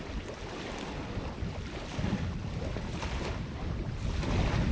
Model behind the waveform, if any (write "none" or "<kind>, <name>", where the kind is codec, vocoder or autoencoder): none